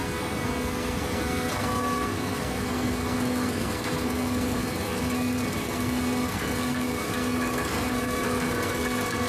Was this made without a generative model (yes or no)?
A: no